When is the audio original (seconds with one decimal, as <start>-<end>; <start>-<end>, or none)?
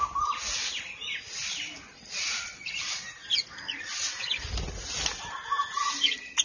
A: 0.0-6.4